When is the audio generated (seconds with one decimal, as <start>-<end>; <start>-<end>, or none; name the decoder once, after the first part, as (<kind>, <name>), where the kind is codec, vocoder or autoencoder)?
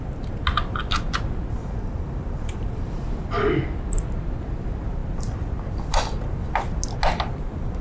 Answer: 1.6-3.0 (vocoder, BigVGAN v2)